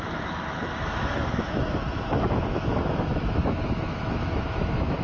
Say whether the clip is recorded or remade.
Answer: remade